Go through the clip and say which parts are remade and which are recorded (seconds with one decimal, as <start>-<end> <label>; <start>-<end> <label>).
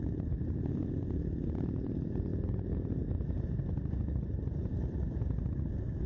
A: 0.0-6.1 remade